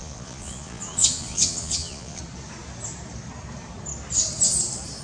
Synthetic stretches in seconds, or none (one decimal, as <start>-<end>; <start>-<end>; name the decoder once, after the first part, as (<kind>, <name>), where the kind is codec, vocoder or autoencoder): 0.0-2.2 (vocoder, Vocos)